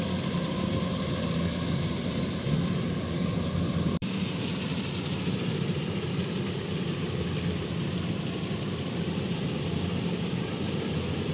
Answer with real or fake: fake